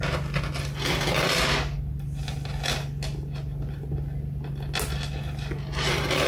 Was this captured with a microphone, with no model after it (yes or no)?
yes